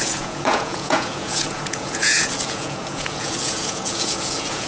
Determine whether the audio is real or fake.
fake